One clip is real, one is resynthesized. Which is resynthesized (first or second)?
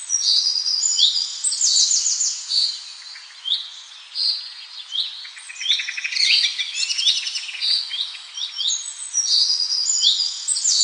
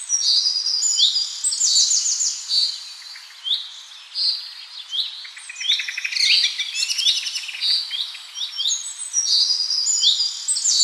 first